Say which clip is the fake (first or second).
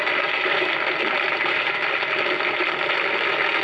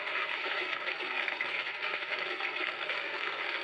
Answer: second